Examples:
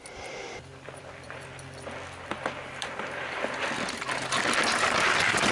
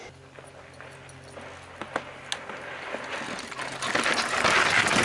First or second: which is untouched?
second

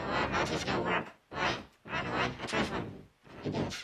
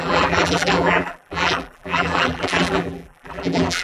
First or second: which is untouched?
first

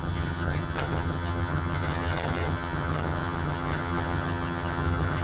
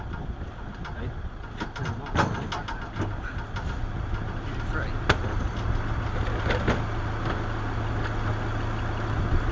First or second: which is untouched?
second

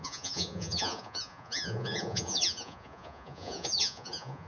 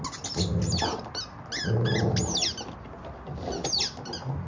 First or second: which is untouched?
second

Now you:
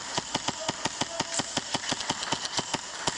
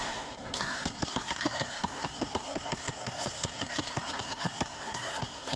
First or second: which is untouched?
first